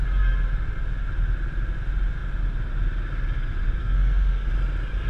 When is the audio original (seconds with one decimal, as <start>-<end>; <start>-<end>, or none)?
0.0-3.8; 4.5-5.1